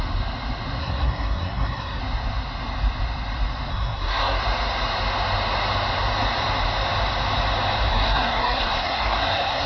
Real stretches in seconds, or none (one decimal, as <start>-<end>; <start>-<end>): 0.0-0.8; 2.0-3.7; 4.4-7.9